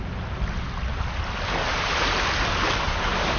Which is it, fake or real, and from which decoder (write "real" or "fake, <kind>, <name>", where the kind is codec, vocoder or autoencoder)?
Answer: real